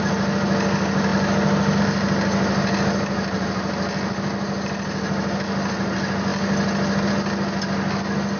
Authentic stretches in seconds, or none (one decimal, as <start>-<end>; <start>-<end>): 0.0-8.4